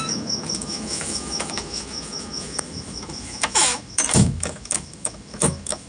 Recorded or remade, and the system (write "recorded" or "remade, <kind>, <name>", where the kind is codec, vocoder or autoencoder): remade, autoencoder, DAC-VAE